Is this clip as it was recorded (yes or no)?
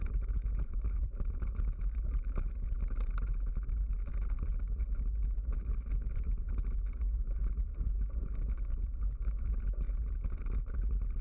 no